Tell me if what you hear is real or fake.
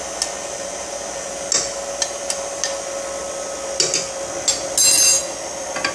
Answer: real